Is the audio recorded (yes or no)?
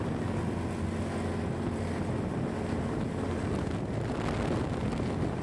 yes